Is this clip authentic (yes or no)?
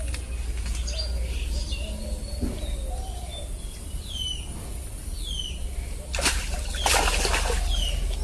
yes